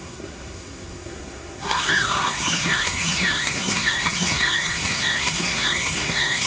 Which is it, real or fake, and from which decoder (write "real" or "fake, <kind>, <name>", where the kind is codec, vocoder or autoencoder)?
fake, codec, SNAC